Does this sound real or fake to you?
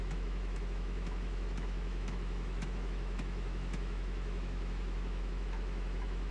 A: fake